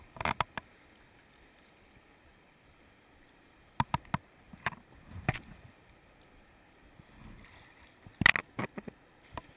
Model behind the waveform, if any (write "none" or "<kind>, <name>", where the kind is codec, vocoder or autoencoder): none